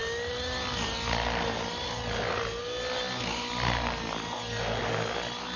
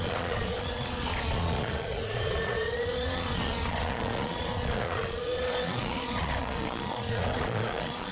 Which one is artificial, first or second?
second